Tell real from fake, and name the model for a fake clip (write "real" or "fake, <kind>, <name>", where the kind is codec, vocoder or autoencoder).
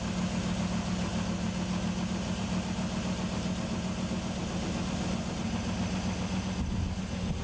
real